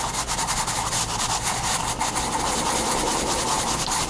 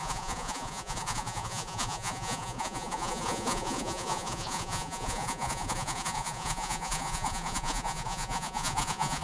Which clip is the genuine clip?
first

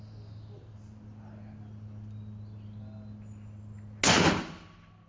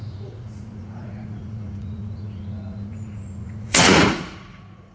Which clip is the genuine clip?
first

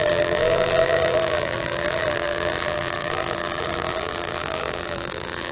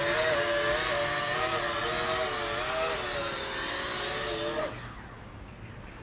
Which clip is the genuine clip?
second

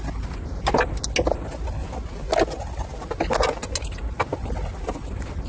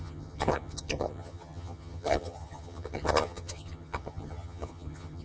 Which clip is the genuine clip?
first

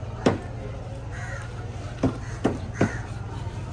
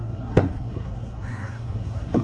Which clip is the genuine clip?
first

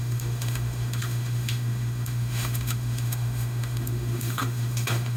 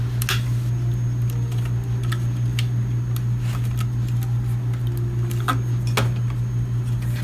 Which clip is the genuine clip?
second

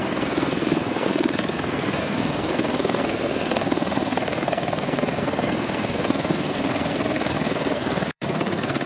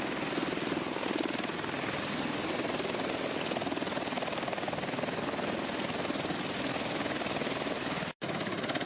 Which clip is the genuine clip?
second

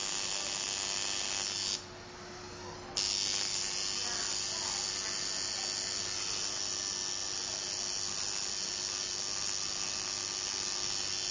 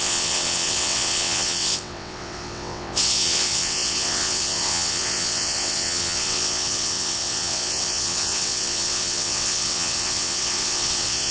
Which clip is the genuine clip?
first